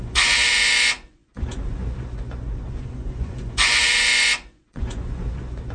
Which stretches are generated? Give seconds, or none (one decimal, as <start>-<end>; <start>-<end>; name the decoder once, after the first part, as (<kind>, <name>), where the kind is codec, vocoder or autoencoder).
0.0-5.7 (vocoder, Vocos)